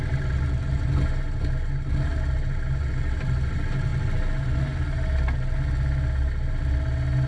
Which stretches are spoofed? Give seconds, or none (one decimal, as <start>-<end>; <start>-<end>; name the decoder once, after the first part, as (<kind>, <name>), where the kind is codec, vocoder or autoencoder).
none

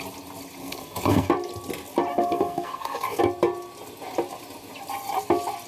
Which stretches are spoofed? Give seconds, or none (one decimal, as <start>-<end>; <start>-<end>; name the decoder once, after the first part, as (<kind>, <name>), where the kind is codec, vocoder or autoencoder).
0.6-1.3 (codec, SNAC); 2.1-3.2